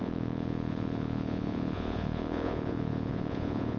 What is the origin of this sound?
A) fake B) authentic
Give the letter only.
A